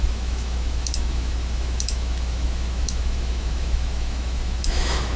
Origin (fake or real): fake